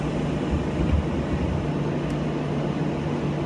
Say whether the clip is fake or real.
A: real